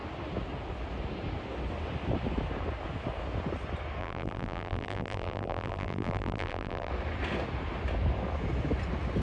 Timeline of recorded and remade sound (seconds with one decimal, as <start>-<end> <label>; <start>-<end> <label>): 0.0-4.0 recorded; 4.0-6.9 remade; 6.9-9.2 recorded